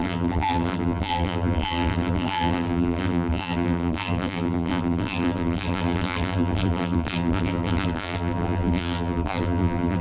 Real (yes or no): no